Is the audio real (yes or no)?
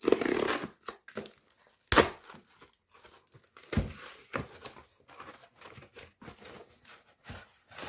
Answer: yes